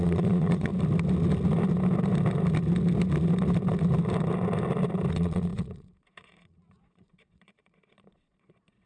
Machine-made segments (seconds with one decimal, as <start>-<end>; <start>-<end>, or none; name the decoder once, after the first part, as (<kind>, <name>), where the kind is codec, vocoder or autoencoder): 0.0-0.7 (vocoder, Vocos); 5.1-8.9